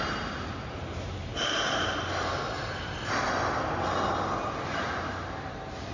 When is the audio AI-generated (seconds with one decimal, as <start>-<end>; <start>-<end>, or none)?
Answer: 0.0-1.3; 4.8-5.9